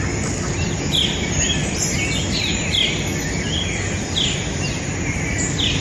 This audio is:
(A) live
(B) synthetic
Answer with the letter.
A